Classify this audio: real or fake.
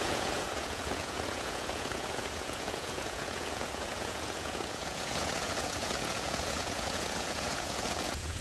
fake